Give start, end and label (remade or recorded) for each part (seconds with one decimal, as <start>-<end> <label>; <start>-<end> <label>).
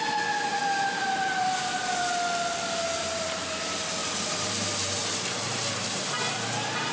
0.0-0.5 recorded; 0.5-2.0 remade; 2.0-3.0 recorded; 3.0-3.6 remade; 3.6-4.0 recorded; 4.0-6.9 remade